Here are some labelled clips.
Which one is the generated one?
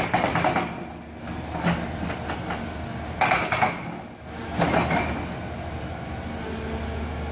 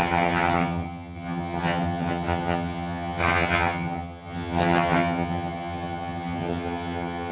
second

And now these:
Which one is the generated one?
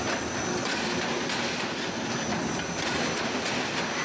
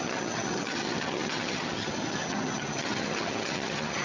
second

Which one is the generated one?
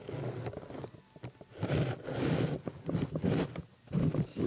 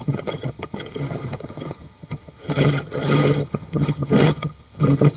second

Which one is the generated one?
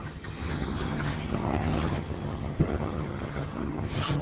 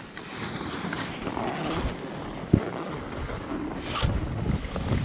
first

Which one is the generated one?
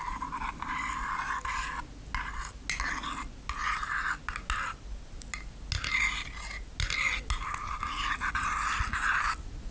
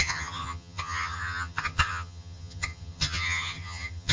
second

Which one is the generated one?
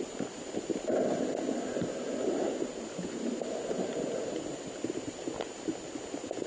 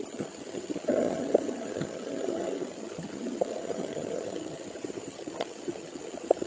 second